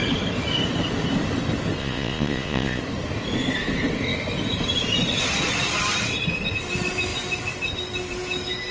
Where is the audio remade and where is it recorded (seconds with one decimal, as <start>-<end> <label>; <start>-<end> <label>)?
0.0-1.8 recorded; 1.8-2.8 remade; 2.8-8.7 recorded